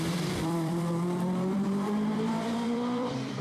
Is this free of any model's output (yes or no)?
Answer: no